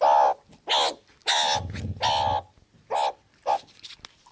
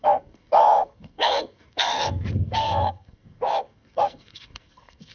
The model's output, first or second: second